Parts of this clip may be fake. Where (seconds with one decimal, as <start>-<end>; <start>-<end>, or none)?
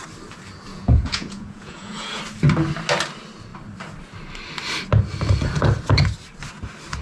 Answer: 0.7-2.2